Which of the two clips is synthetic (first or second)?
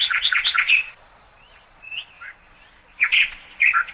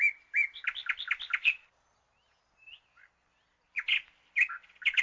first